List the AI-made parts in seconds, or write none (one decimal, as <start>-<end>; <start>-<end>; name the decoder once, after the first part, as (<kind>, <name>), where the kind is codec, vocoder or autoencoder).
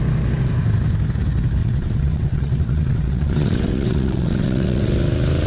1.6-4.9 (vocoder, WaveNeXt)